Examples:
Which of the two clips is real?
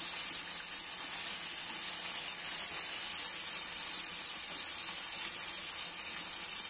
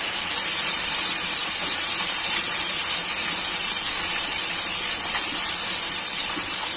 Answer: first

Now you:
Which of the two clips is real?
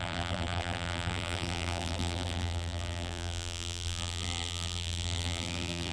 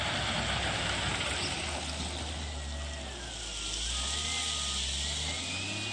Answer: second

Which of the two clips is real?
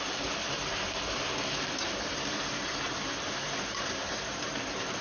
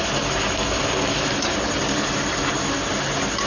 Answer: second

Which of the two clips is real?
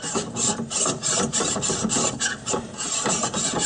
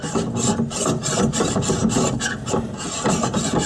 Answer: second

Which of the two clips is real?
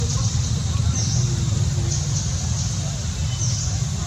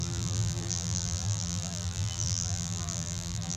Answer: first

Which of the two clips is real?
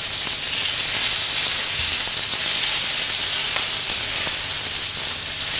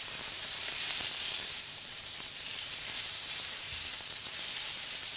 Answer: first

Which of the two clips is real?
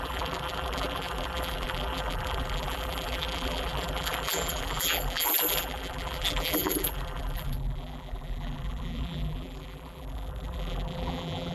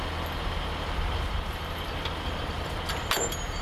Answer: second